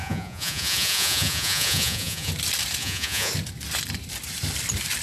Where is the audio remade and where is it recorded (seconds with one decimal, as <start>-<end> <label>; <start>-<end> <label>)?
0.0-2.3 remade; 2.3-2.8 recorded; 2.8-3.3 remade; 3.3-5.0 recorded